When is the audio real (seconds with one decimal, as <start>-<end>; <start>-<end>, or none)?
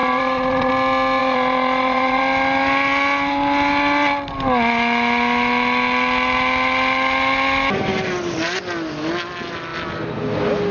0.7-1.2; 2.2-10.7